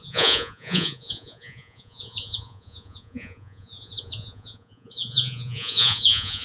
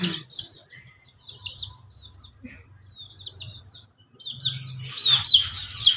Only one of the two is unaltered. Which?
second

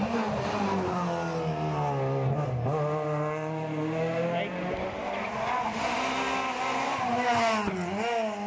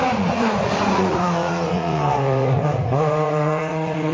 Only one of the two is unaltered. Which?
first